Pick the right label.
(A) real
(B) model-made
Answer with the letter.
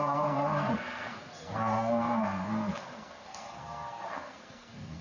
B